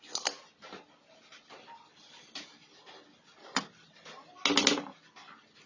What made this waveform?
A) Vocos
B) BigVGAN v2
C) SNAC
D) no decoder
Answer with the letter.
D